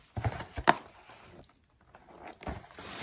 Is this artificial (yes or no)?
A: no